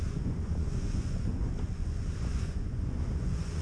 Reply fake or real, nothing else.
fake